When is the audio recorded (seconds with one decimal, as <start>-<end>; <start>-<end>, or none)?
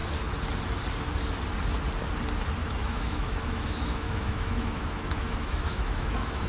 0.0-2.6